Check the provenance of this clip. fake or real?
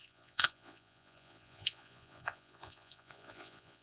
fake